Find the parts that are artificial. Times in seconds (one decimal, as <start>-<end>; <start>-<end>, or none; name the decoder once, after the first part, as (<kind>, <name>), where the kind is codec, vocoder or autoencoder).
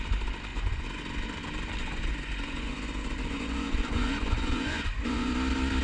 0.5-1.0 (vocoder, Vocos); 1.8-5.3